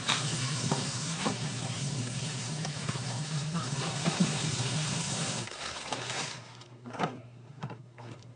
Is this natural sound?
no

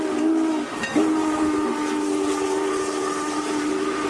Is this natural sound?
yes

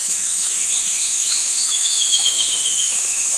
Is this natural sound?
no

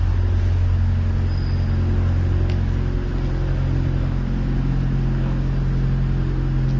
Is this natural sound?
yes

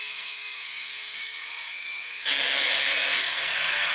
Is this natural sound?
no